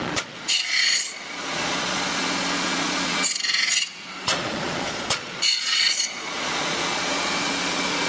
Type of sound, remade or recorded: remade